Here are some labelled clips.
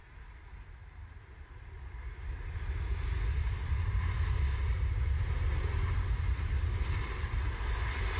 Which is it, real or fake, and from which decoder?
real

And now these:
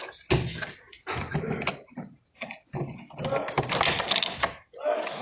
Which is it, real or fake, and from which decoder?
real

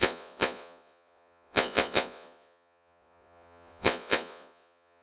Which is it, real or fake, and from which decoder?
fake, vocoder, Vocos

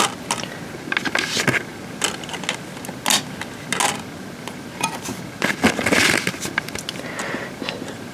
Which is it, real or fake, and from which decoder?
real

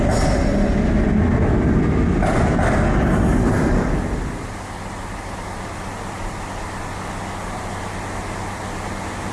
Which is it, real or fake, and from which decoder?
real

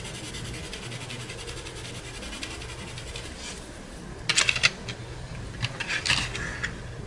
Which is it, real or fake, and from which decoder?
real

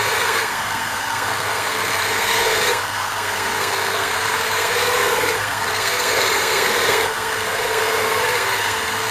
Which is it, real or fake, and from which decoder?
fake, codec, SNAC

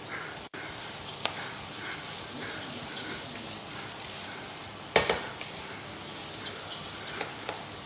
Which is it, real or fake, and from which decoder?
real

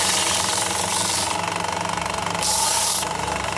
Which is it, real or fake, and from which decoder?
real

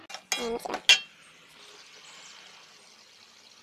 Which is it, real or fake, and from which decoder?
real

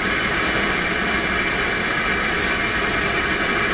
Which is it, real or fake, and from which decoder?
real